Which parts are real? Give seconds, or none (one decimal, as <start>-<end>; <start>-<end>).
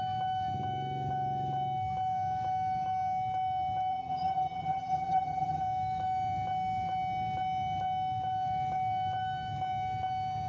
0.0-3.9; 5.6-10.5